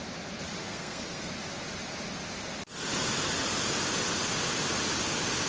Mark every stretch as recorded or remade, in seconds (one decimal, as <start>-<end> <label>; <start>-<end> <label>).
0.0-0.6 recorded; 0.6-1.3 remade; 1.3-5.5 recorded